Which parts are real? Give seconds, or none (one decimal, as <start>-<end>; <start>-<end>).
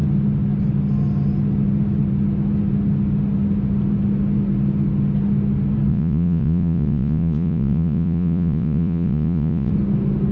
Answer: 0.0-5.9; 9.7-10.3